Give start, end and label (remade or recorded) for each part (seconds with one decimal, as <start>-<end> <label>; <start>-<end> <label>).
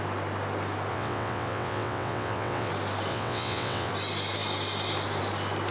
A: 0.0-0.9 recorded; 0.9-2.7 remade; 2.7-3.1 recorded; 3.1-3.9 remade; 3.9-5.7 recorded